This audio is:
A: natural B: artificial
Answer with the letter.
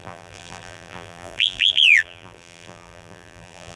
B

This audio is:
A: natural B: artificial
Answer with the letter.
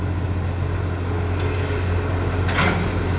A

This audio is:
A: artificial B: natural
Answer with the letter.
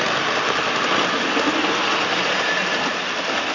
B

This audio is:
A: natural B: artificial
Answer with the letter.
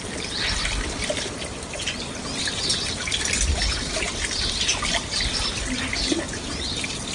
A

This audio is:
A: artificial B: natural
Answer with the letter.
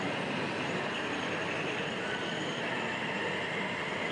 A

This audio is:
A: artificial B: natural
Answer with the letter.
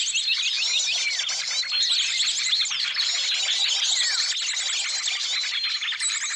B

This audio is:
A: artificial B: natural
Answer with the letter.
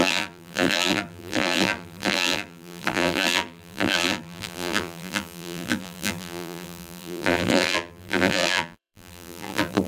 A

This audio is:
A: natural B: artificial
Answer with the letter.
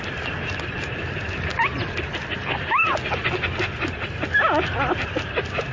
A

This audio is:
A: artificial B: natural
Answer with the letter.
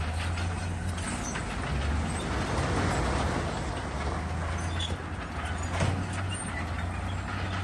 B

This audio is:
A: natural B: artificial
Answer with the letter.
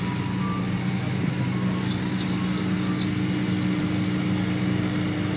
A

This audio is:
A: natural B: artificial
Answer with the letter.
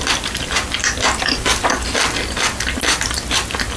A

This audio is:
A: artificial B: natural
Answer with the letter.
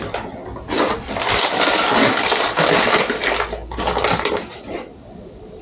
B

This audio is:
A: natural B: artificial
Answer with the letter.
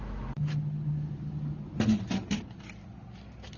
A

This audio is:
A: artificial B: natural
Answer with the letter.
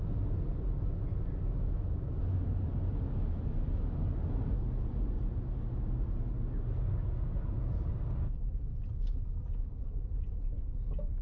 B